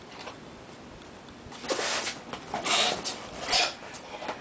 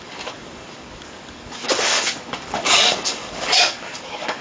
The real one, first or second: first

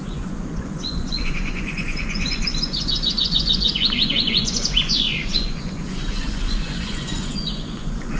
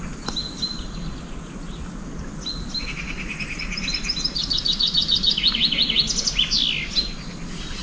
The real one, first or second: second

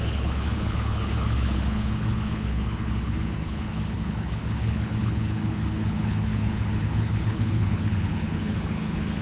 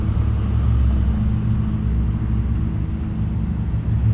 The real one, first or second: second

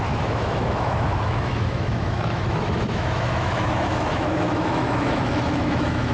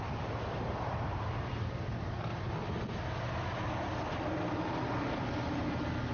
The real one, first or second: second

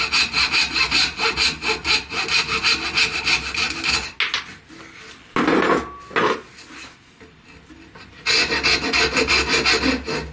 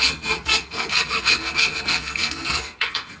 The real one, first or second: first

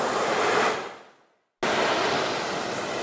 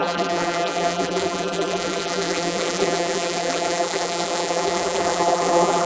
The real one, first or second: first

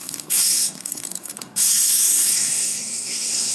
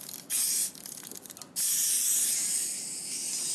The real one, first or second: second